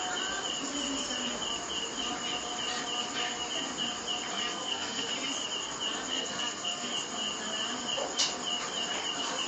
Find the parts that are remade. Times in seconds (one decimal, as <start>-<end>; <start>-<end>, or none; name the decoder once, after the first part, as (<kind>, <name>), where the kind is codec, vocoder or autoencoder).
4.5-5.1 (codec, SNAC); 6.1-6.9